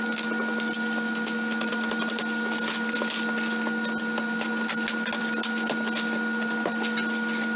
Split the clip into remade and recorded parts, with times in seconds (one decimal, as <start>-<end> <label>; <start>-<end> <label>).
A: 0.0-7.6 recorded